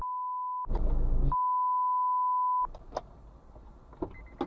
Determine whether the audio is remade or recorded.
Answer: recorded